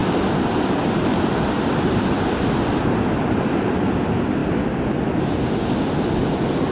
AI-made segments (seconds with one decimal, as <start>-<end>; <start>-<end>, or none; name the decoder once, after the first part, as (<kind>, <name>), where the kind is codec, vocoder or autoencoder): none